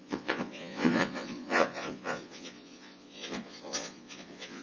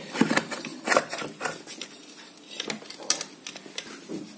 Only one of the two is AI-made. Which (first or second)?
first